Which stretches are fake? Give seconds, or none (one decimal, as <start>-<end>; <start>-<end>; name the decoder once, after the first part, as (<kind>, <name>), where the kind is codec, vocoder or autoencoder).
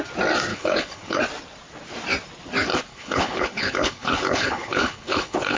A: 0.5-1.2 (codec, HILCodec); 2.9-5.6